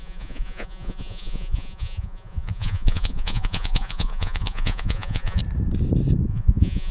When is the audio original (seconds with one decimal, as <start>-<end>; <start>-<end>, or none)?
5.4-6.3